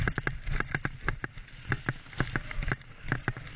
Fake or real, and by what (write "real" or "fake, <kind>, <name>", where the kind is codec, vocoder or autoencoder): real